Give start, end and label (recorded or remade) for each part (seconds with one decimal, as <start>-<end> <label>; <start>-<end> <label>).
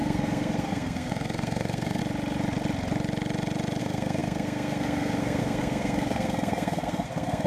0.0-2.0 remade; 2.0-3.8 recorded; 3.8-7.5 remade